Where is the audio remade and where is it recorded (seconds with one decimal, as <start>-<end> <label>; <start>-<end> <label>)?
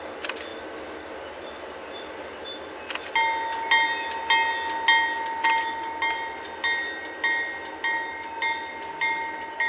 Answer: 0.0-9.7 recorded